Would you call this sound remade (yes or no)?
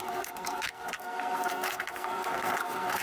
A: yes